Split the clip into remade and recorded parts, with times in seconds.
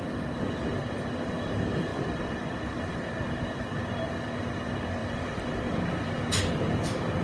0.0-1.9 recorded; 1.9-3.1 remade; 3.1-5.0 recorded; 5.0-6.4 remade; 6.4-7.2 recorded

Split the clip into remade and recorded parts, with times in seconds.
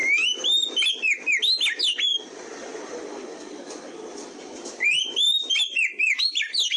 0.0-2.1 recorded; 2.1-6.2 remade; 6.2-6.8 recorded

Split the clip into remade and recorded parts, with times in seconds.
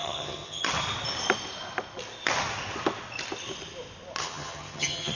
0.0-0.6 remade; 0.6-4.2 recorded; 4.2-5.1 remade